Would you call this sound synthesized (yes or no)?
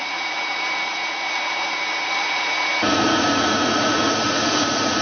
yes